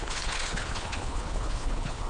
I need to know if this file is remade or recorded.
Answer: remade